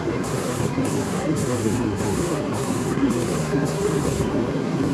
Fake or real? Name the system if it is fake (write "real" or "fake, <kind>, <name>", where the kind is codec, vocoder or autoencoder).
fake, codec, SNAC